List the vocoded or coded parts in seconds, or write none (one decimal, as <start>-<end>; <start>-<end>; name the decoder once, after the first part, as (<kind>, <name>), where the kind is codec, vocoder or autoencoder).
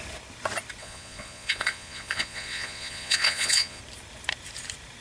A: 0.8-3.8 (vocoder, Vocos)